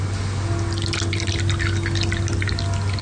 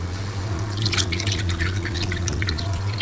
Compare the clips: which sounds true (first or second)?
first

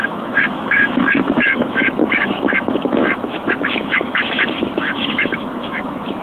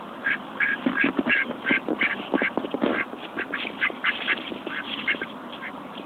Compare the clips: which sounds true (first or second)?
second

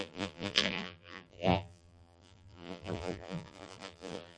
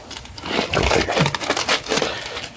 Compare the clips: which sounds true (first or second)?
second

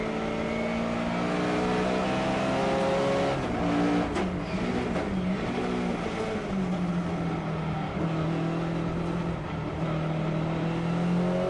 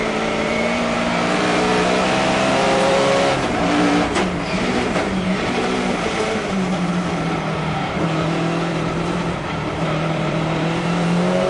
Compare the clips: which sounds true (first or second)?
first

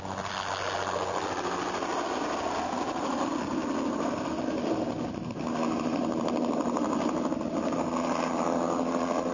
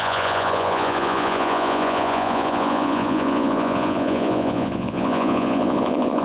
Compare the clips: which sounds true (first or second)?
first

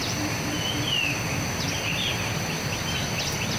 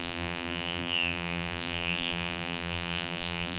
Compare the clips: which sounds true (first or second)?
first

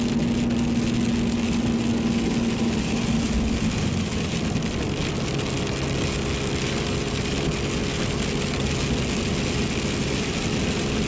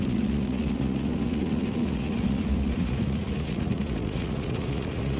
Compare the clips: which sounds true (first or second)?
first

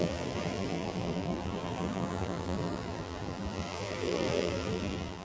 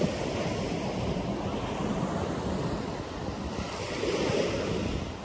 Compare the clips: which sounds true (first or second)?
second